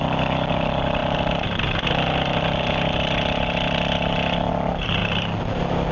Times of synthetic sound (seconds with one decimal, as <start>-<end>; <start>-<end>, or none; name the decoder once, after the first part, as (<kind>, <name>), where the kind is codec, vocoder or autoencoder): none